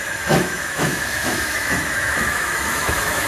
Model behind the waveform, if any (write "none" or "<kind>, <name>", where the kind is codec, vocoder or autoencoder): autoencoder, DAC-VAE